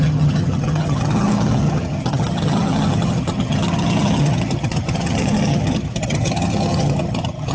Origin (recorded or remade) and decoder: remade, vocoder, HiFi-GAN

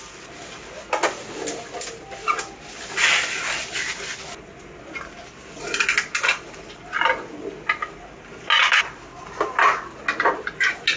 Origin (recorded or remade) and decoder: recorded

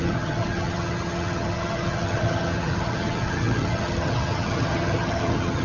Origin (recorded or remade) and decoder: remade, vocoder, HiFi-GAN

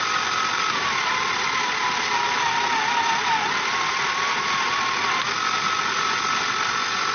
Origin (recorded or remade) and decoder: recorded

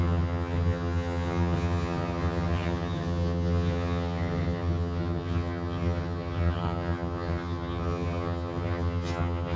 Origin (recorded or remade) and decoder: remade, vocoder, HiFi-GAN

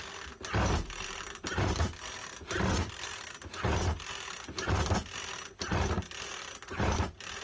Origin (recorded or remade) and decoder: recorded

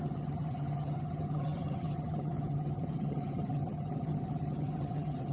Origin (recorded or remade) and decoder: remade, vocoder, HiFi-GAN